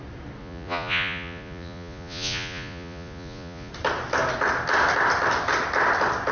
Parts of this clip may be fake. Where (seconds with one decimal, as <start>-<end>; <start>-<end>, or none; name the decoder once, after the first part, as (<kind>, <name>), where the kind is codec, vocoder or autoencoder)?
0.4-3.7 (vocoder, Vocos)